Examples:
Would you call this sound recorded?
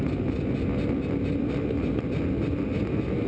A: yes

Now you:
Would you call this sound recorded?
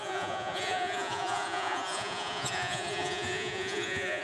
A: no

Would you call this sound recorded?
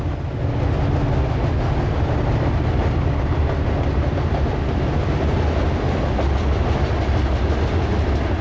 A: yes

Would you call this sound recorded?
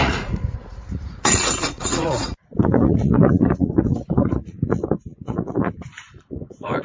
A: no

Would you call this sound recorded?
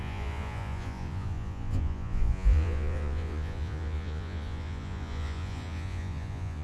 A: no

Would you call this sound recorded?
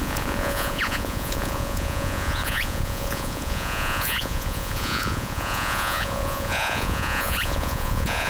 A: no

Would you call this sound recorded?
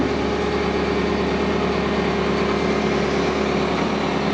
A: yes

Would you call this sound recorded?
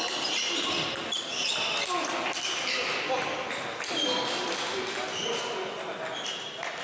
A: yes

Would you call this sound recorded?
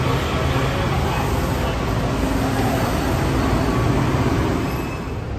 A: yes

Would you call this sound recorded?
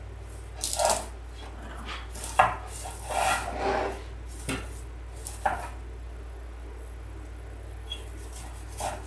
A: yes